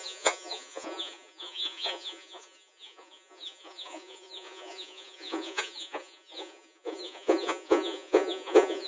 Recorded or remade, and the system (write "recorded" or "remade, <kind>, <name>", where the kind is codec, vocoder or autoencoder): remade, vocoder, Vocos